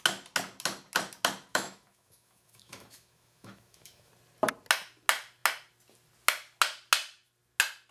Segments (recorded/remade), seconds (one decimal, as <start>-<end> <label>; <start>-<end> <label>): 0.0-1.5 recorded; 1.5-4.1 remade; 4.1-7.9 recorded